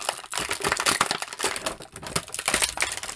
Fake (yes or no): no